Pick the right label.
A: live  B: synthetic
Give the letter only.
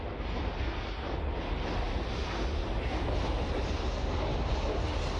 A